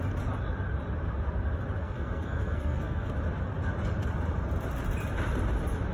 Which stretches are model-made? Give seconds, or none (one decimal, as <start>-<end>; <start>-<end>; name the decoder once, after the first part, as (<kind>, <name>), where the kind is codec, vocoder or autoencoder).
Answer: 1.8-3.1 (codec, SNAC)